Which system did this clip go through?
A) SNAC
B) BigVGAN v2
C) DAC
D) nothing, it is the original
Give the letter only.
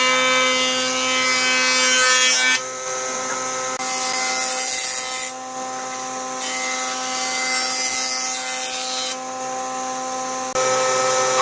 D